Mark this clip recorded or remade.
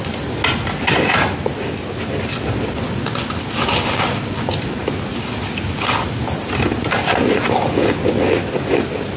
recorded